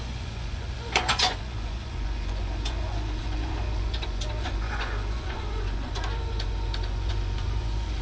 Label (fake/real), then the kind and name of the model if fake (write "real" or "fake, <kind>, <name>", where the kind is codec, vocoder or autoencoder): fake, vocoder, Vocos